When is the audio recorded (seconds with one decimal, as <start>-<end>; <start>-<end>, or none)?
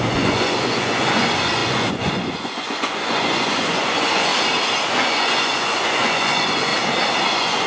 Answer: 4.3-4.9; 6.7-7.3